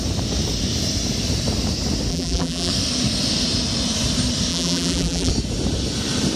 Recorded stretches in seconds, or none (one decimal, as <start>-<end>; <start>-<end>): 0.0-2.1; 2.7-4.5; 5.3-6.4